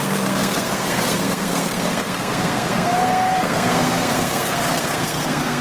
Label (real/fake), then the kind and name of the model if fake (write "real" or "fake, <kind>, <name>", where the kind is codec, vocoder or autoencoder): fake, codec, SNAC